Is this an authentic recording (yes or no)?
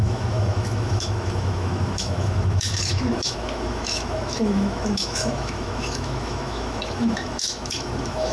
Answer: no